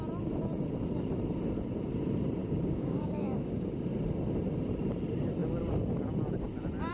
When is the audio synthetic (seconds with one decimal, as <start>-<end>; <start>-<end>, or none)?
2.4-3.8